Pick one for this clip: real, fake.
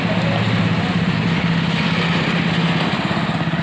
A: real